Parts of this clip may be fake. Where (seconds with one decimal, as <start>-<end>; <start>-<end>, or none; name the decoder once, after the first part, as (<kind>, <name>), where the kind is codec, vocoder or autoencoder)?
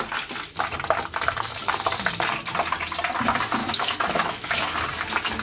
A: 3.6-4.6 (autoencoder, DAC-VAE)